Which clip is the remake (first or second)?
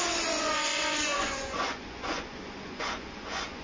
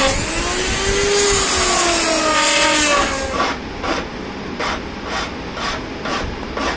first